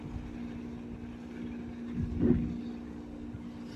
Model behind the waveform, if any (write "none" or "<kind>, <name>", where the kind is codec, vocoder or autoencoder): none